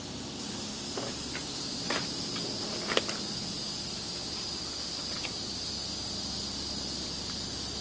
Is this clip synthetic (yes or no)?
no